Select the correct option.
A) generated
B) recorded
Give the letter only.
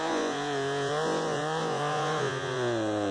A